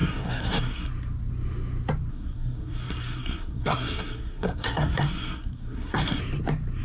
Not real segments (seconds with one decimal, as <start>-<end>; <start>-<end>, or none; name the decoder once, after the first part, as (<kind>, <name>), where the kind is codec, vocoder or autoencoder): 0.0-0.9 (codec, SNAC); 2.1-6.2